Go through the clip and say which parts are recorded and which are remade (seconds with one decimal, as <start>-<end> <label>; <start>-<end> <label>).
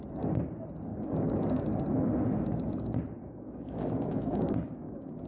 0.0-0.9 recorded; 0.9-1.6 remade; 1.6-3.2 recorded; 3.2-5.3 remade